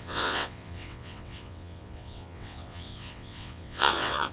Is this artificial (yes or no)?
yes